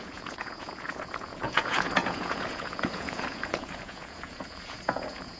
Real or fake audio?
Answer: fake